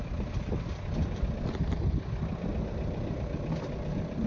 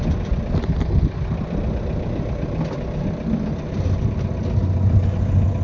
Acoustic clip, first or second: second